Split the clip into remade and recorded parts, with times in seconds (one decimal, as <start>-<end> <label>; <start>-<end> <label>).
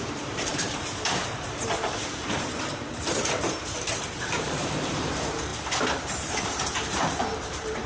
0.0-5.5 remade; 5.5-6.1 recorded; 6.1-7.9 remade